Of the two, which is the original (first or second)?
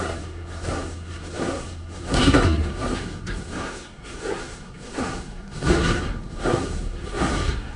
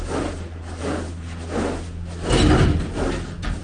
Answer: second